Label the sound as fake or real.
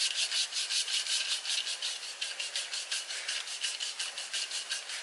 real